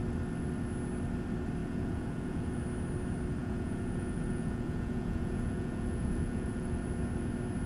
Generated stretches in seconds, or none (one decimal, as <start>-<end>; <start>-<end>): 1.6-2.6; 3.4-6.8